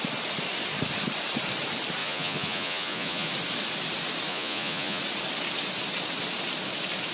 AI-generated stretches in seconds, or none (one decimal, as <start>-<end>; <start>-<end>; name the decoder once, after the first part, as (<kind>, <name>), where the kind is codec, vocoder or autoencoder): 2.0-3.3 (vocoder, Vocos); 4.3-5.0